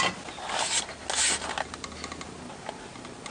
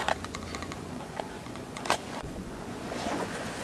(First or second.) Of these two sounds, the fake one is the second